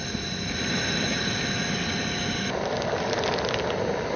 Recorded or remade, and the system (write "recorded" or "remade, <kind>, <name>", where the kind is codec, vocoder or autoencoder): recorded